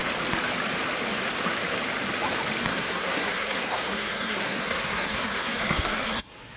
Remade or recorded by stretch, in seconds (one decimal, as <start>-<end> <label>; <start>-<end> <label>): 0.0-2.7 recorded; 2.7-6.6 remade